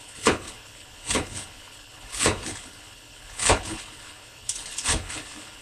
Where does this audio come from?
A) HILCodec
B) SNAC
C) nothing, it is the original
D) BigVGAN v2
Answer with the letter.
A